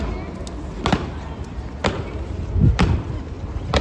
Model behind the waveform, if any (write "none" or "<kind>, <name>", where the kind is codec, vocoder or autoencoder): none